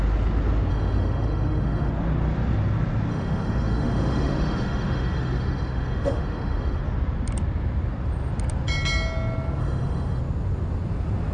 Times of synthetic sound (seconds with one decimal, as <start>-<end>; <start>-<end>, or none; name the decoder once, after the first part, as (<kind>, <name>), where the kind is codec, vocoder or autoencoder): 0.7-1.9 (autoencoder, DAC-VAE); 3.1-6.8; 9.6-10.2